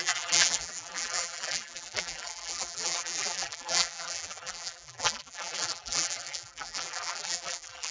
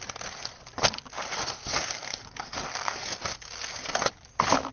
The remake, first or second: first